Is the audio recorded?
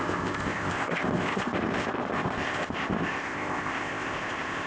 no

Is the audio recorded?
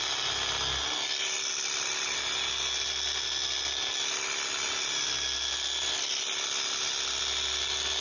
yes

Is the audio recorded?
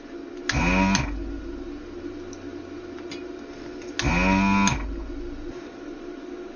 yes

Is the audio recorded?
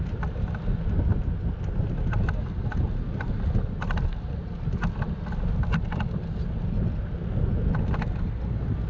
yes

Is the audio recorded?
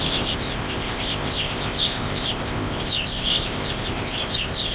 no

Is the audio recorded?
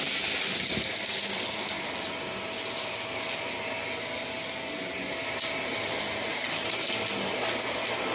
yes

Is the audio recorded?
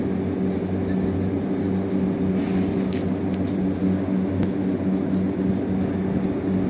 yes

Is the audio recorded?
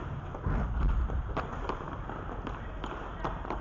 yes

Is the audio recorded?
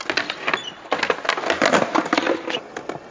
yes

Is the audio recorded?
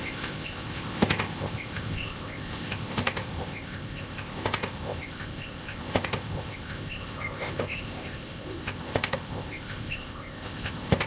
no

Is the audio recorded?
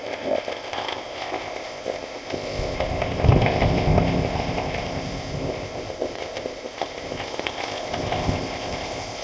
no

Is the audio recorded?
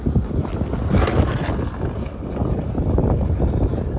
yes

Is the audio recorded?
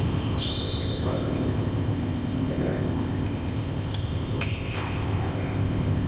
no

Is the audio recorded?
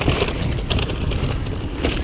yes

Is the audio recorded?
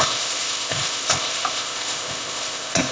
no